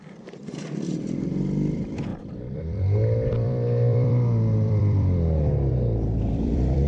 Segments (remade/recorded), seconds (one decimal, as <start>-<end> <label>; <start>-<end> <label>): 0.0-6.9 remade